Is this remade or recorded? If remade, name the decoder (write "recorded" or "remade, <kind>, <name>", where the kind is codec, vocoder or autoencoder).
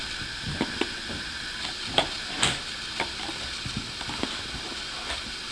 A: recorded